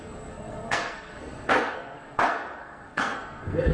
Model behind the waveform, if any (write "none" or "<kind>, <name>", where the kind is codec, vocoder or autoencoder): codec, SNAC